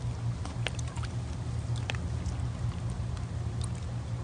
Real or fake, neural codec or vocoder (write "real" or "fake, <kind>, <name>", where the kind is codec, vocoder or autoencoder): real